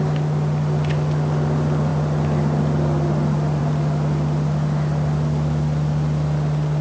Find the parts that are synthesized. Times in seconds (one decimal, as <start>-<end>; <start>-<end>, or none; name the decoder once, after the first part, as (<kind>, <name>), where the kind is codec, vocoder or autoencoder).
none